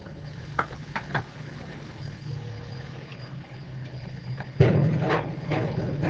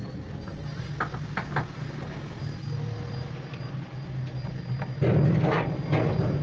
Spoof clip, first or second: first